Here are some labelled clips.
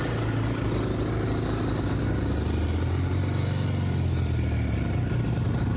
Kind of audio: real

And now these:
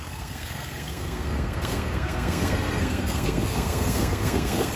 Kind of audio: fake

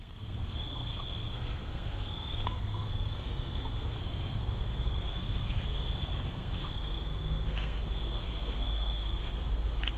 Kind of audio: fake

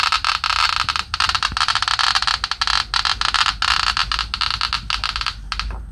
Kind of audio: real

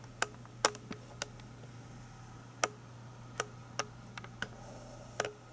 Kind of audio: real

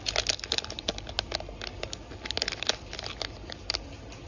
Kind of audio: real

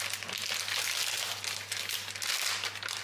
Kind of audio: real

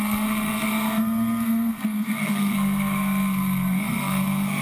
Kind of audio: fake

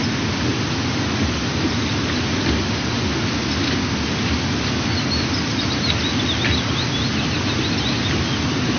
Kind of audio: real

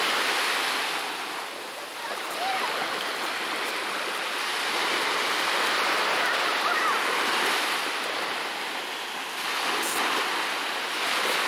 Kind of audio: real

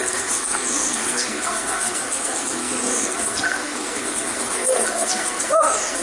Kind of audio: fake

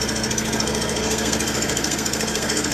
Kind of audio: fake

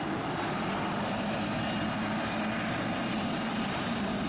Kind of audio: real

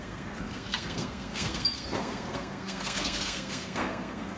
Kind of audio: fake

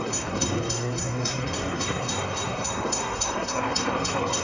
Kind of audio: fake